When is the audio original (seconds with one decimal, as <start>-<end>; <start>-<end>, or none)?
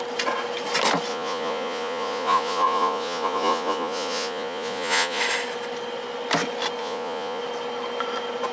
0.0-1.1; 5.2-6.8; 7.4-8.5